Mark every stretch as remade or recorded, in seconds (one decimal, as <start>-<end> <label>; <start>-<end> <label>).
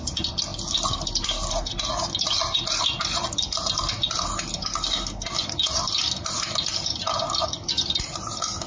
0.0-8.7 recorded